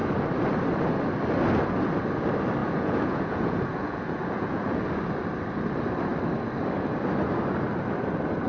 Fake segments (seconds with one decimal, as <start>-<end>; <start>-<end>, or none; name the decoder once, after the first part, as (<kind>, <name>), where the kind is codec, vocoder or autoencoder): 2.6-4.8 (vocoder, Vocos)